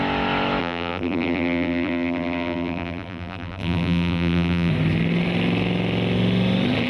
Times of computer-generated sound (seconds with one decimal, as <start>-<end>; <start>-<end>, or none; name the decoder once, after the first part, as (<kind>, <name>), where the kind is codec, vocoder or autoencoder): 0.6-4.7 (vocoder, BigVGAN v2)